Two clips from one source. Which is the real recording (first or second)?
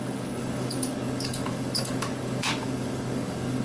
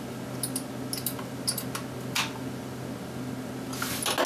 second